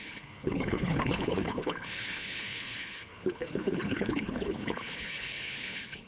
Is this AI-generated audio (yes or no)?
yes